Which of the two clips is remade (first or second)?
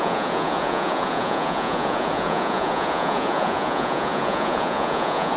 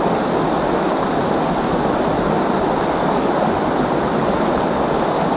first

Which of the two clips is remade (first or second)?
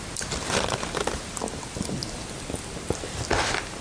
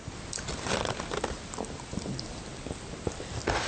first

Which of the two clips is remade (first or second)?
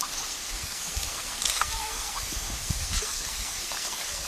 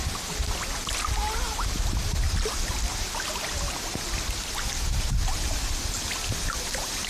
first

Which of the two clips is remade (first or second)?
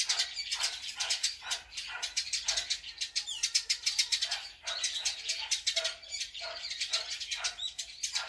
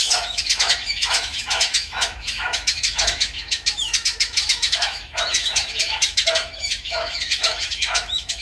second